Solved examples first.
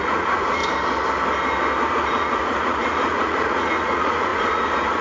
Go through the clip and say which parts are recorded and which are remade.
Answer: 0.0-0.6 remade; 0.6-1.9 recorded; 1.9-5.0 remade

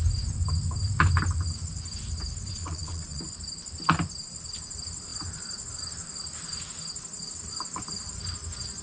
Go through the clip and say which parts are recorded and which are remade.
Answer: 0.0-2.5 recorded; 2.5-3.2 remade; 3.2-8.8 recorded

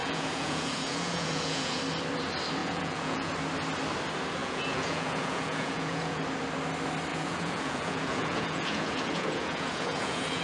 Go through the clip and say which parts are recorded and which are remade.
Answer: 0.0-1.8 remade; 1.8-2.6 recorded; 2.6-3.3 remade; 3.3-4.4 recorded; 4.4-6.2 remade; 6.2-7.1 recorded; 7.1-10.4 remade

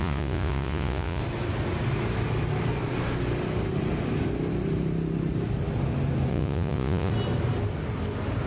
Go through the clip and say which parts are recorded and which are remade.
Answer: 0.0-1.2 remade; 1.2-6.3 recorded; 6.3-7.1 remade; 7.1-8.5 recorded

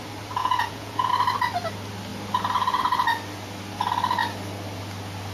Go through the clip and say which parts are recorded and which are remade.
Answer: 0.0-0.4 recorded; 0.4-1.1 remade; 1.1-5.3 recorded